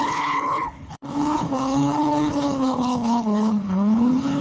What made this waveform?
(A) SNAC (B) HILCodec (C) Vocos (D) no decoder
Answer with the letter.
B